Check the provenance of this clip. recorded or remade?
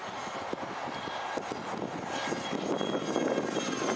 recorded